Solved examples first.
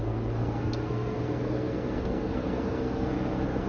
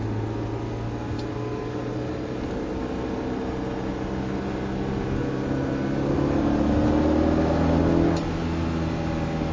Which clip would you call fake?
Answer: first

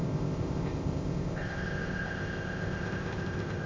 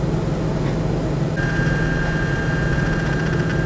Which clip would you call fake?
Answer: first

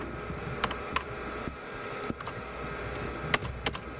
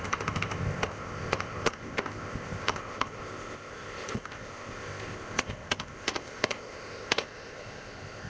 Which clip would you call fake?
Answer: second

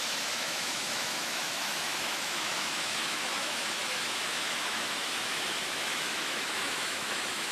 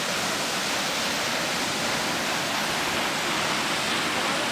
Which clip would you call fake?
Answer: first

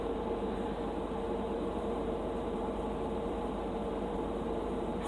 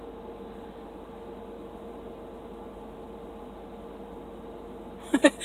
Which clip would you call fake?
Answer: first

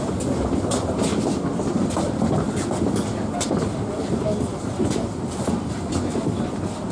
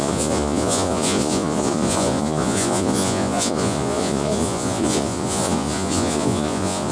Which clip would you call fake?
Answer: second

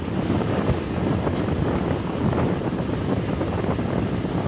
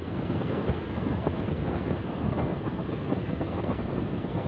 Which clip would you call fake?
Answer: second